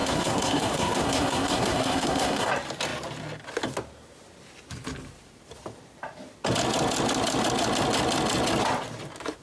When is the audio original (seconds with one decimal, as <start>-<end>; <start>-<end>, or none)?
2.5-9.4